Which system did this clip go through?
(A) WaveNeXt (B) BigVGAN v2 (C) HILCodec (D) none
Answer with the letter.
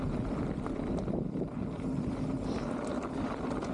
D